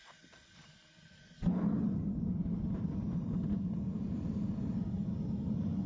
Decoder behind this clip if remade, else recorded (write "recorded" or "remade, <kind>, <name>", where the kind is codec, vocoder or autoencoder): recorded